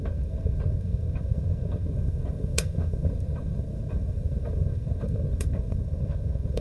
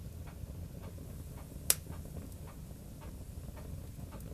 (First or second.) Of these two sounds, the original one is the second